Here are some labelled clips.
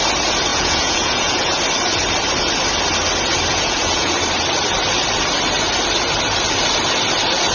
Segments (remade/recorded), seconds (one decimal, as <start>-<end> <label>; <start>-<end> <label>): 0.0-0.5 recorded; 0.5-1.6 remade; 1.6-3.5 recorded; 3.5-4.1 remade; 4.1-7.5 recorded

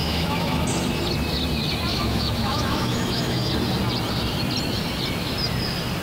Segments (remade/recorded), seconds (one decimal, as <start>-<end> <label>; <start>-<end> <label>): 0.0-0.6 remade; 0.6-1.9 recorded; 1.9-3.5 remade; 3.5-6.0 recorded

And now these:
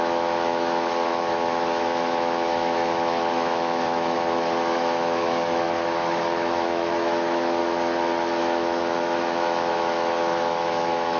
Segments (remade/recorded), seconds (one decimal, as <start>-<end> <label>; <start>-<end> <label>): 0.0-7.6 remade; 7.6-8.4 recorded; 8.4-11.2 remade

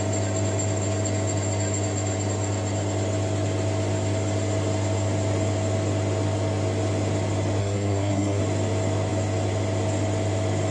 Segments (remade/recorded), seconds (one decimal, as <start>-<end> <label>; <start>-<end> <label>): 0.0-7.6 recorded; 7.6-8.4 remade; 8.4-10.7 recorded